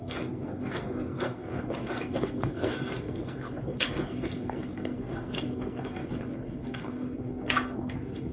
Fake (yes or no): yes